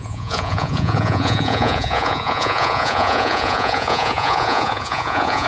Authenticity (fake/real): fake